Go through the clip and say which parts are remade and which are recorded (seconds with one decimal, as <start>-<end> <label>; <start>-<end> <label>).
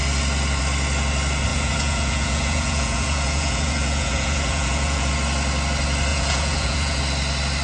0.0-1.5 recorded; 1.5-5.1 remade; 5.1-6.1 recorded; 6.1-7.0 remade; 7.0-7.6 recorded